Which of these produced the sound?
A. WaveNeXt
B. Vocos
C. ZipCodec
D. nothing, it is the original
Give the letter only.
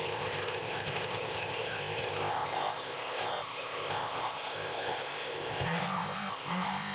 C